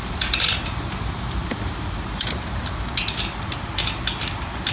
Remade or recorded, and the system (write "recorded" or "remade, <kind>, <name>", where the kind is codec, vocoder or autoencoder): recorded